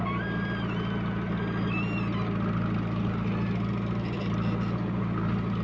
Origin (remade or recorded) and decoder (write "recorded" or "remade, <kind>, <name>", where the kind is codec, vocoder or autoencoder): recorded